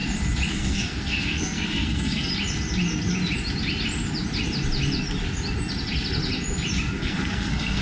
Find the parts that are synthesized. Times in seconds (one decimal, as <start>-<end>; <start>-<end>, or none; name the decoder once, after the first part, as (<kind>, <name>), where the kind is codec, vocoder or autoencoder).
0.5-2.3 (codec, SNAC); 7.0-7.8